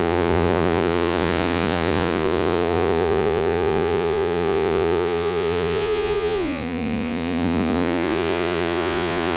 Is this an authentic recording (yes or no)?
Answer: no